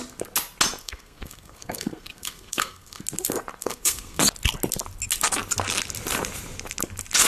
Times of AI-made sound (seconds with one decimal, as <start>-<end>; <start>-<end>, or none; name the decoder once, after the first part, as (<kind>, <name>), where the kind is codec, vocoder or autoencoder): 0.8-3.0 (codec, SNAC); 3.6-4.2